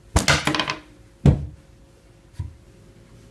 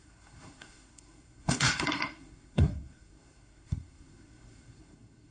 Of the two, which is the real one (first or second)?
first